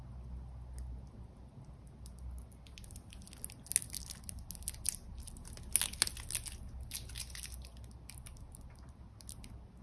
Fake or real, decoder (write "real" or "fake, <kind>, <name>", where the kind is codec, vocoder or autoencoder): real